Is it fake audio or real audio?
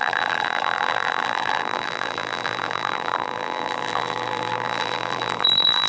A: fake